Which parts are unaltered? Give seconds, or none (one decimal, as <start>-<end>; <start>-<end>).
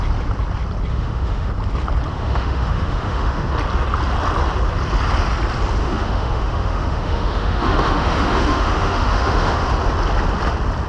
0.0-0.9; 1.5-2.1; 3.5-5.8; 9.7-10.9